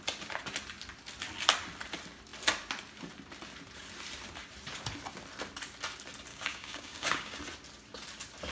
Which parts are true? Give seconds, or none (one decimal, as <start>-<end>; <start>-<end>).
0.0-6.3; 7.4-8.5